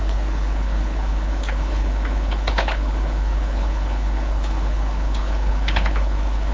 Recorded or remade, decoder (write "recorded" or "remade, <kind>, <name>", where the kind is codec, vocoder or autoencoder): remade, codec, HILCodec